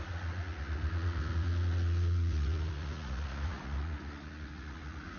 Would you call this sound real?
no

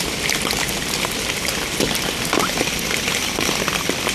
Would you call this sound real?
yes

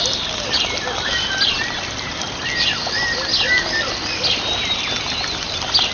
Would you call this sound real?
yes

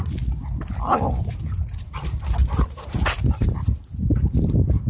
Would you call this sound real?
yes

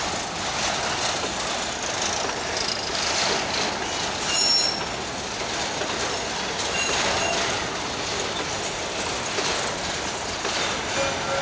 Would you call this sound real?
yes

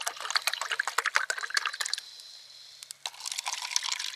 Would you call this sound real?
yes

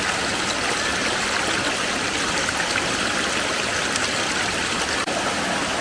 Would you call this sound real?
yes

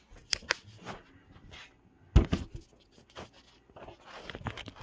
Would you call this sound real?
yes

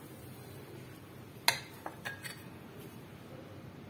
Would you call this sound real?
yes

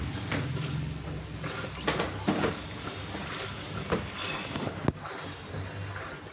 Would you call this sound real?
yes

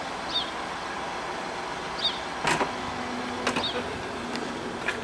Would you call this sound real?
yes